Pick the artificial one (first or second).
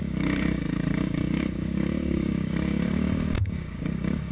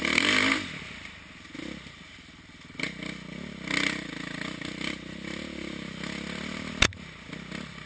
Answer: first